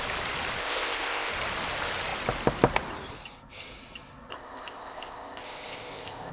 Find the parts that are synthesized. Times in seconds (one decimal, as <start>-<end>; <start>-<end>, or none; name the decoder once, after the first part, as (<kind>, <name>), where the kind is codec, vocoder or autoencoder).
0.6-1.3 (codec, ZipCodec); 4.3-6.3